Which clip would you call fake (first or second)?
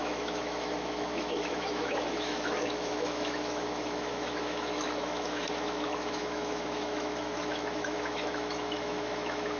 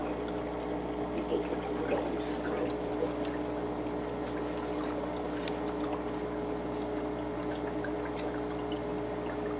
first